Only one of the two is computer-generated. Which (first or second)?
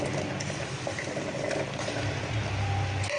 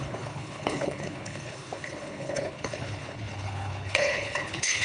second